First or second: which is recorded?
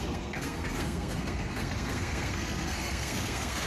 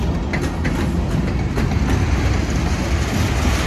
second